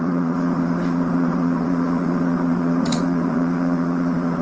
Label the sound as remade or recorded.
remade